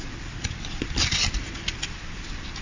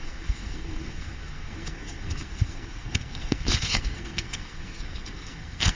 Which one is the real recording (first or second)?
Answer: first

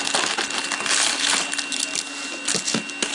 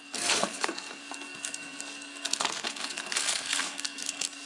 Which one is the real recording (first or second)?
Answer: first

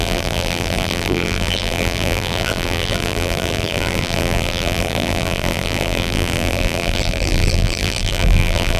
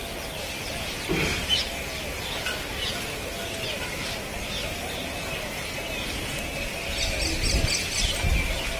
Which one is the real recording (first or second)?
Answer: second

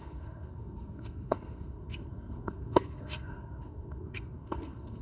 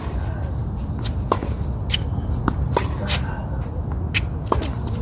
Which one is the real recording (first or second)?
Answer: second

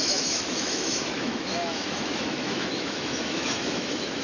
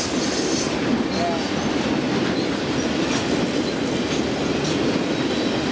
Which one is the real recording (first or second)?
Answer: second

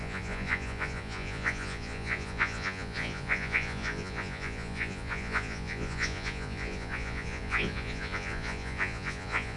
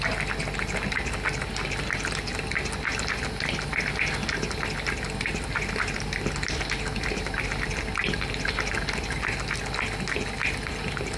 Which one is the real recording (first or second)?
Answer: second